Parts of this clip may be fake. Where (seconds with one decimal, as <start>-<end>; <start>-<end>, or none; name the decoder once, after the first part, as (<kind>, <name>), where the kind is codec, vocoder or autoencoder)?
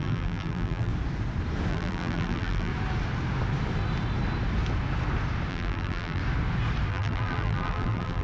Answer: 0.0-0.9 (vocoder, BigVGAN v2); 1.7-2.7; 5.5-6.2; 6.9-8.2